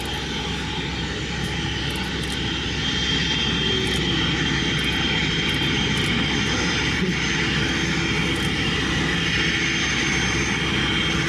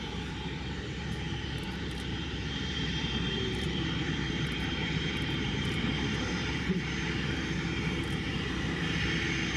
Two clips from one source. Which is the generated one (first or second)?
second